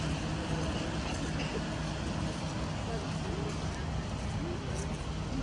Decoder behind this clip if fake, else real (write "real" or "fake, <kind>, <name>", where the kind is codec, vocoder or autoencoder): real